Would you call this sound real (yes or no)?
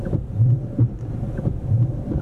no